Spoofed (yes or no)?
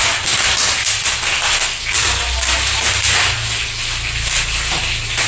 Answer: no